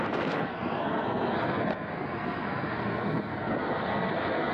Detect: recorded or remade remade